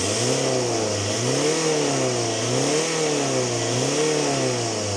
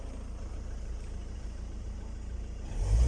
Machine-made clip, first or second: second